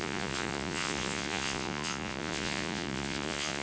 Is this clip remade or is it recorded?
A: remade